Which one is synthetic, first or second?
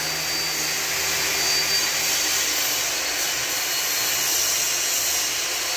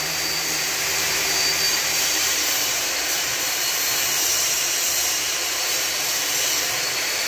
second